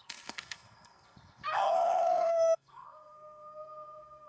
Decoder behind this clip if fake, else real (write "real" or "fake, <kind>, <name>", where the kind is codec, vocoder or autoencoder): fake, codec, SNAC